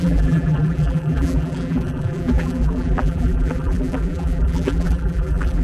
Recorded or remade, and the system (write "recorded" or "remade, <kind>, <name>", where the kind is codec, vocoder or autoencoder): remade, vocoder, BigVGAN v2